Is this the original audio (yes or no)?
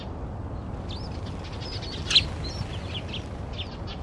yes